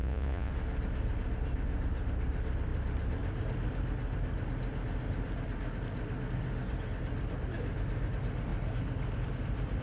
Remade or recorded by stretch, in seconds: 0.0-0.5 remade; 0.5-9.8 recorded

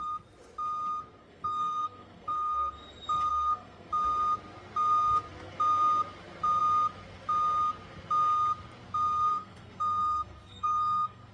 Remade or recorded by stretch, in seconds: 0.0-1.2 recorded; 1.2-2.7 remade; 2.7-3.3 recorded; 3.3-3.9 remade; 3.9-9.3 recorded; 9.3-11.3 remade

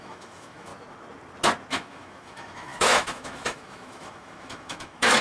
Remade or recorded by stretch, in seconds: 0.0-0.7 remade; 0.7-1.7 recorded; 1.7-5.2 remade

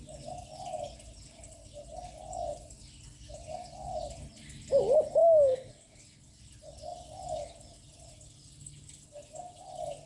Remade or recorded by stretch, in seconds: 0.0-5.2 recorded; 5.2-6.0 remade; 6.0-10.1 recorded

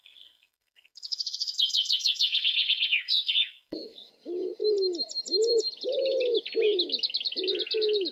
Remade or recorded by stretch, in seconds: 0.0-4.1 remade; 4.1-8.1 recorded

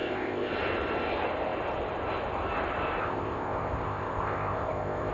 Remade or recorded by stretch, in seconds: 0.0-0.5 remade; 0.5-3.0 recorded; 3.0-5.1 remade